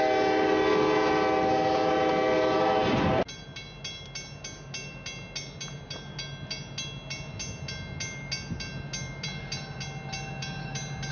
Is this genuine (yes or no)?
yes